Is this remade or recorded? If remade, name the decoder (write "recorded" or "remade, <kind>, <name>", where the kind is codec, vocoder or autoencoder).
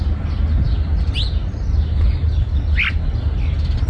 recorded